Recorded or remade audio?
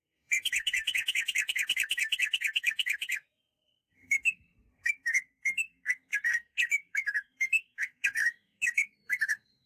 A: remade